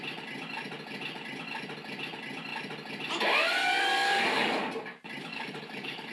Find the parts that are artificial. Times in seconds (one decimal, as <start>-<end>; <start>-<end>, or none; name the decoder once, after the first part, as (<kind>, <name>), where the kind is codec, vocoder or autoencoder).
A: 3.6-4.6 (codec, DAC); 5.2-6.1